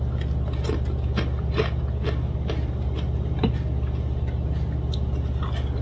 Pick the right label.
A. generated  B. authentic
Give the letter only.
B